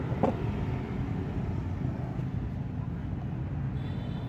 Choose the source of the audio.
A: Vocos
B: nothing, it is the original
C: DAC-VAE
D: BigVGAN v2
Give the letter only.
B